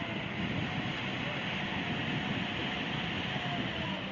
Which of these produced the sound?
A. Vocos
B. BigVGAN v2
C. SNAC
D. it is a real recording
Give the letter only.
D